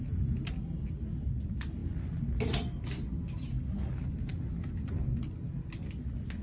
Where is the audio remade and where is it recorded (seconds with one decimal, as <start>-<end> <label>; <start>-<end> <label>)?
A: 0.0-6.4 recorded